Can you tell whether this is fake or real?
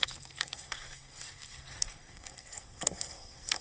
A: fake